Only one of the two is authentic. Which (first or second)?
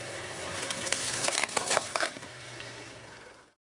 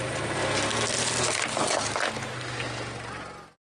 second